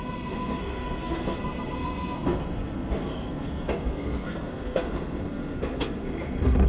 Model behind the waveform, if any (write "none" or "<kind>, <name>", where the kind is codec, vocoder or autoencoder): codec, SNAC